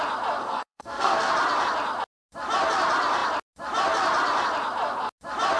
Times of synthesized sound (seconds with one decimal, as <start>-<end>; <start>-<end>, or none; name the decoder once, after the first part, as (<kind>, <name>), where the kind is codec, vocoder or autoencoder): 0.4-1.3 (codec, SNAC)